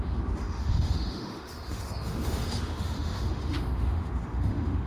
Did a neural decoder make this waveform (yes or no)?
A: yes